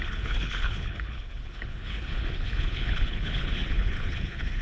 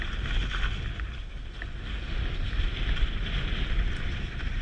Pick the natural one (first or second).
second